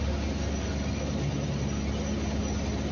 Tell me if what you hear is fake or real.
real